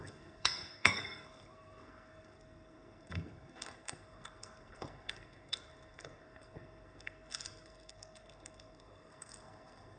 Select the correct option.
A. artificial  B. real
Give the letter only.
A